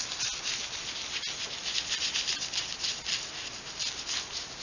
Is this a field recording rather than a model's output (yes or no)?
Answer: yes